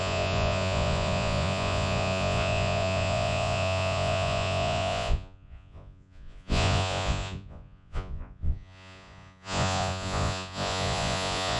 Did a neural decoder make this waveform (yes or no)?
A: yes